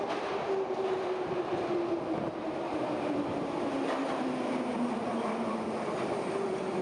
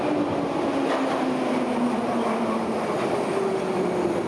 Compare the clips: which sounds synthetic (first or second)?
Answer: first